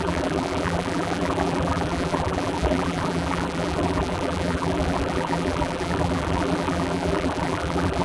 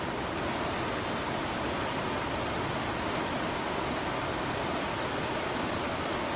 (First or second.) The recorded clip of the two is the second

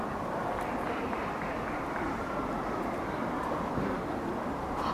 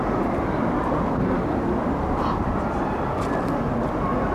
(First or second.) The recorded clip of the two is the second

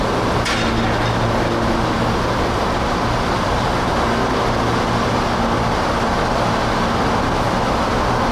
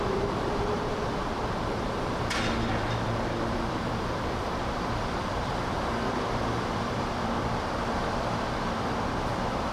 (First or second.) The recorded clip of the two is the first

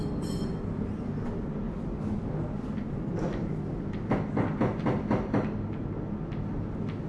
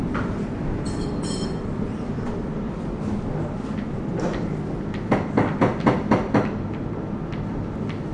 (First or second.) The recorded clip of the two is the first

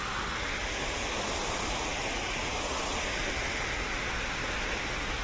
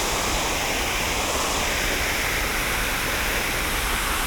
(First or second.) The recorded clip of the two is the first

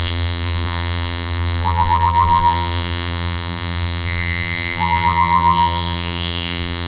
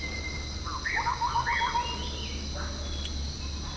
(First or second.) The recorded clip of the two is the second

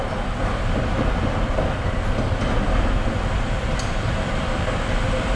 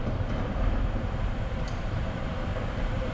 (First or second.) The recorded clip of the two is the first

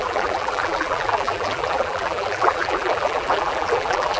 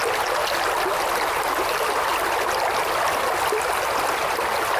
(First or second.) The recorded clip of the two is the second